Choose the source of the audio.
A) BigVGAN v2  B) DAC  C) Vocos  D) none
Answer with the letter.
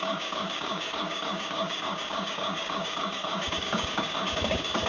B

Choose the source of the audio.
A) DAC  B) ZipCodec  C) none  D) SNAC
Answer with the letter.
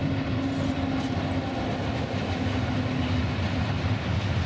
C